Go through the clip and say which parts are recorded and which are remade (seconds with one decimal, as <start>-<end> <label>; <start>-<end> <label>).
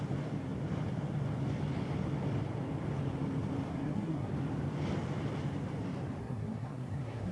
0.0-3.7 recorded; 3.7-4.3 remade; 4.3-6.2 recorded; 6.2-7.3 remade